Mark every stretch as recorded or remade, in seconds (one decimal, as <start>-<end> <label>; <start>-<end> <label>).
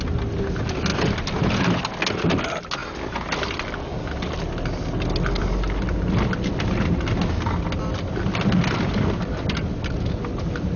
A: 0.0-10.8 recorded